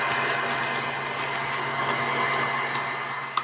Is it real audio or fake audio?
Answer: real